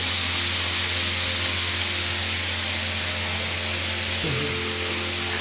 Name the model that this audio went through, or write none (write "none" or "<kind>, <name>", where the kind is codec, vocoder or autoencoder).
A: none